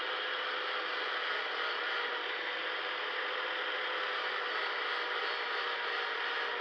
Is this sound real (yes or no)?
yes